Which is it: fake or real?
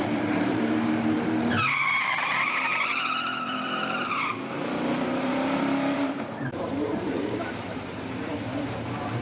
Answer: fake